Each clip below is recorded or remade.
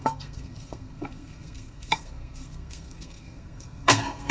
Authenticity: remade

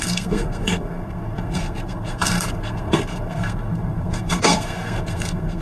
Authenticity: remade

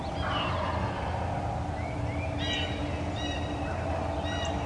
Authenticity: recorded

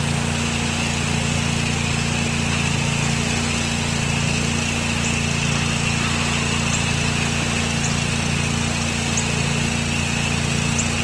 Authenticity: recorded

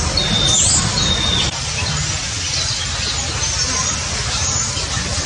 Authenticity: recorded